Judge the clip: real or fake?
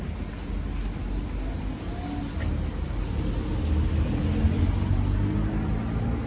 real